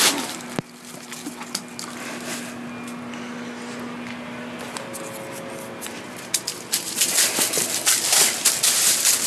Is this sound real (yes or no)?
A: yes